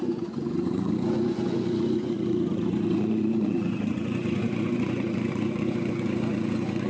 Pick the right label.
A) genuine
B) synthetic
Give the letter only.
B